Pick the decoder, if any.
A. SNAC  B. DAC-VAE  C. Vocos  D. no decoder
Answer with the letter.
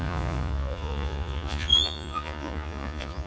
C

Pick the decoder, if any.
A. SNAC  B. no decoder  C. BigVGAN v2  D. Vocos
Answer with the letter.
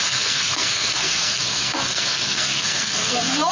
A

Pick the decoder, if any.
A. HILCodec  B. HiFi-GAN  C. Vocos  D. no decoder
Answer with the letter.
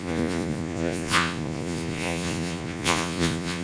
C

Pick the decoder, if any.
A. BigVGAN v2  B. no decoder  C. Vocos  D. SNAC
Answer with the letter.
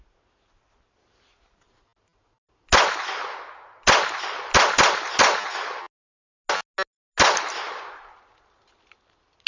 B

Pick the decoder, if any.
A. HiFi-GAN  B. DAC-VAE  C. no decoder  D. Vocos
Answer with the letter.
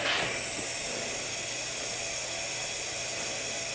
C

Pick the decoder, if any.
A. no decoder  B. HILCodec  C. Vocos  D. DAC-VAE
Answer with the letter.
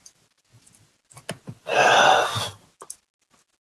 A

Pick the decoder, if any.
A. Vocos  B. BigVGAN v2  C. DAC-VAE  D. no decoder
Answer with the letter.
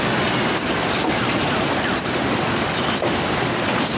D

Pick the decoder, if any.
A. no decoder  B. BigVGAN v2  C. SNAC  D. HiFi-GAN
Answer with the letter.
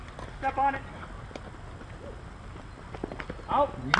A